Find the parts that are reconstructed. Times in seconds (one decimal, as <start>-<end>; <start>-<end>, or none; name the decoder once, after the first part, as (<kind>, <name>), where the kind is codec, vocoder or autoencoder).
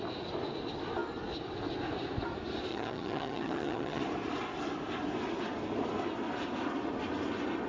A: 2.7-4.0 (vocoder, HiFi-GAN)